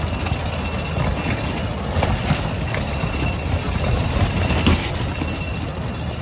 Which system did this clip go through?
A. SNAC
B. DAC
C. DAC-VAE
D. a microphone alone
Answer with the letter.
D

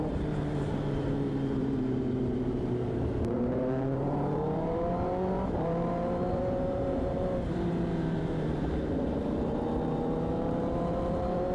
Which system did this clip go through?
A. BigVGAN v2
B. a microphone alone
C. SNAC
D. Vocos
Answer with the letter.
A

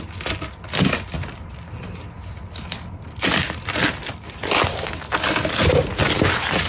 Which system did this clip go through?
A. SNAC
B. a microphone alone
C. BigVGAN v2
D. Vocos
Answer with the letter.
B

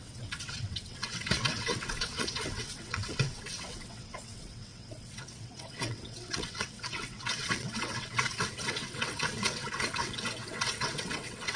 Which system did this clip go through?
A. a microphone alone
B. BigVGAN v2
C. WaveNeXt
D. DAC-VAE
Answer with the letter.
C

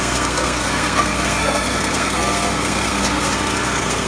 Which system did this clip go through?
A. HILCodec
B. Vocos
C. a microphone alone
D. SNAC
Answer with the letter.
D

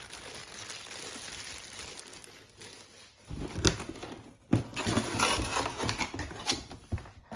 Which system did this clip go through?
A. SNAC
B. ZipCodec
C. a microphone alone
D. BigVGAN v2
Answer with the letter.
C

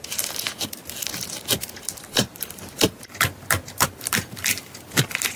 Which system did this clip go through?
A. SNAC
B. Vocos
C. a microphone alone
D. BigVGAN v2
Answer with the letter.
D